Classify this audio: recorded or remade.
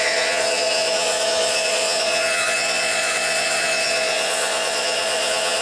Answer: remade